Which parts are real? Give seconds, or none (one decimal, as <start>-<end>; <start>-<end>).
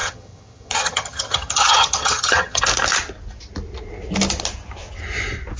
2.6-5.6